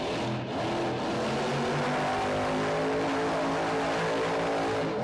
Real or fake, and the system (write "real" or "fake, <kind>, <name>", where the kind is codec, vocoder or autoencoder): real